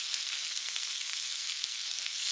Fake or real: fake